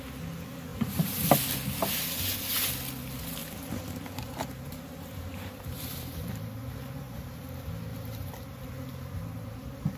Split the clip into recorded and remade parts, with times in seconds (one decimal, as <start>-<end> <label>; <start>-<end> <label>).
0.0-0.7 recorded; 0.7-1.3 remade; 1.3-3.4 recorded; 3.4-7.4 remade; 7.4-7.9 recorded; 7.9-8.7 remade; 8.7-10.0 recorded